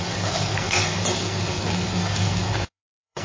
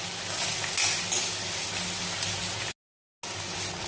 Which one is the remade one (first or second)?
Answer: first